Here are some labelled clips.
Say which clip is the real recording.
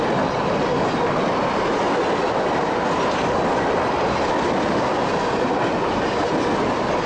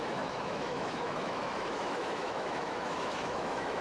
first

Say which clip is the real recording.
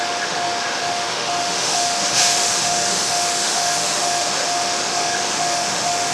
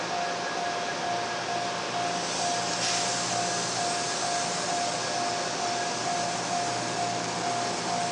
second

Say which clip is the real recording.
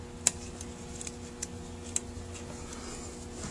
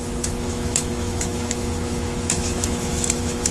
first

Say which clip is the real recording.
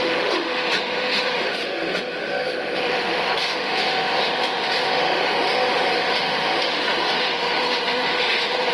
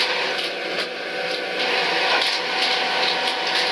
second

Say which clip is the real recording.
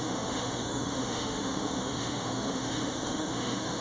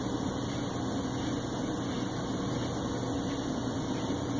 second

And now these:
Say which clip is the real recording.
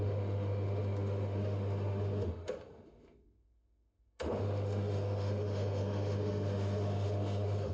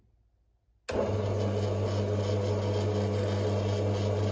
second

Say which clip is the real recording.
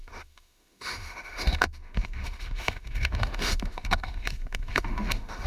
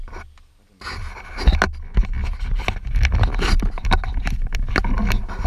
second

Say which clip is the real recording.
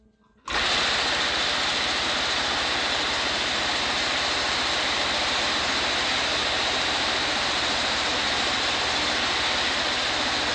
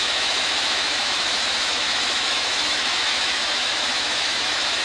first